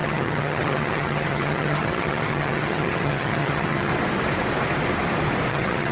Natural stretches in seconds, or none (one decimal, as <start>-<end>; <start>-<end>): 3.9-5.5

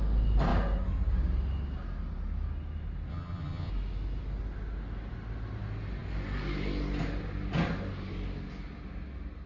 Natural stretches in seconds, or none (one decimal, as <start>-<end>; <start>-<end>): 0.0-3.1; 3.7-9.5

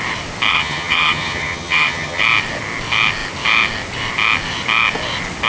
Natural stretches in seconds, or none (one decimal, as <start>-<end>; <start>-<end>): 0.0-0.5; 2.2-5.5

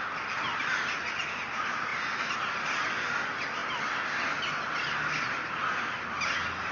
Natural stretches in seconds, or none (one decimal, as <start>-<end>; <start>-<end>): 0.0-6.7

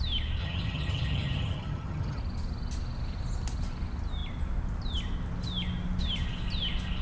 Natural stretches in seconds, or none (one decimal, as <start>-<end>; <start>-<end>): 0.0-0.4; 2.2-7.0

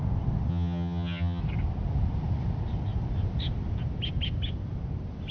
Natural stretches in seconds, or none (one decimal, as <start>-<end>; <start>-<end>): 0.0-0.5; 1.4-5.3

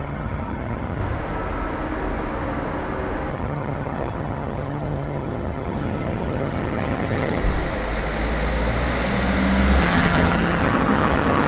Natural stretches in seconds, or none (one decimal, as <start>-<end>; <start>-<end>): 1.0-3.3; 7.4-9.8